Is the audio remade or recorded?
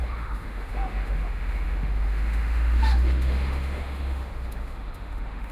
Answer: remade